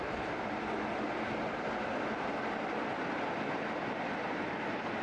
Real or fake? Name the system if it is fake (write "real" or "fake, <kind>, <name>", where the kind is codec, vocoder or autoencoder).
real